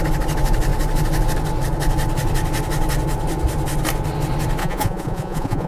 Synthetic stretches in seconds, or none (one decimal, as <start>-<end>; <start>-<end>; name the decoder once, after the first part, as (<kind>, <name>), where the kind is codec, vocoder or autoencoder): 4.6-5.7 (vocoder, Vocos)